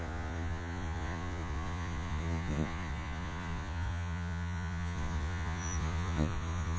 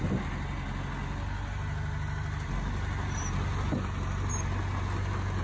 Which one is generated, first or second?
first